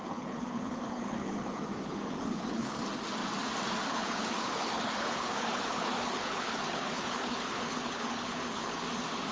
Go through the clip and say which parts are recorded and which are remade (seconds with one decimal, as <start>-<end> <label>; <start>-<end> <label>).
0.0-2.8 remade; 2.8-3.9 recorded; 3.9-8.8 remade; 8.8-9.3 recorded